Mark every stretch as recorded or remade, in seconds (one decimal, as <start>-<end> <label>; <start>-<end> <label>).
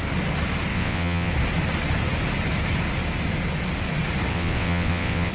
0.0-0.7 recorded; 0.7-1.3 remade; 1.3-4.3 recorded; 4.3-5.3 remade